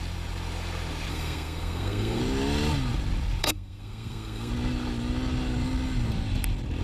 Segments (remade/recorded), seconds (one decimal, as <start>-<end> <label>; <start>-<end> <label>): 0.0-1.1 recorded; 1.1-2.2 remade; 2.2-3.4 recorded; 3.4-4.5 remade; 4.5-6.8 recorded